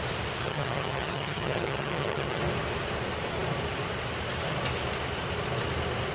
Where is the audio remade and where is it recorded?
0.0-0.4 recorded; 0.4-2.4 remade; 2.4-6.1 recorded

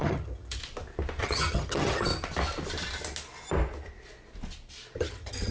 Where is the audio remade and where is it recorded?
0.0-0.6 remade; 0.6-1.2 recorded; 1.2-2.1 remade; 2.1-5.0 recorded; 5.0-5.5 remade

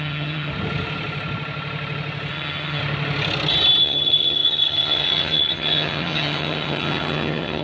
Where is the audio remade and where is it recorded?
0.0-0.5 remade; 0.5-2.3 recorded; 2.3-2.8 remade; 2.8-3.8 recorded; 3.8-7.6 remade

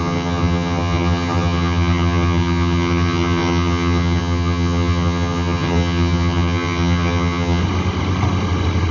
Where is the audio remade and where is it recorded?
0.0-7.6 remade; 7.6-8.9 recorded

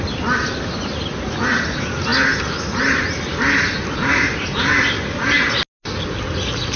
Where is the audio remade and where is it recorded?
0.0-6.8 recorded